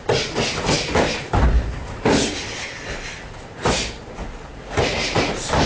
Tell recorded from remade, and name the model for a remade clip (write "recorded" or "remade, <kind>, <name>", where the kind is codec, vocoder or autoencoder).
recorded